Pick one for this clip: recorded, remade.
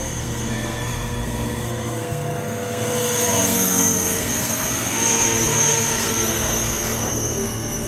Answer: remade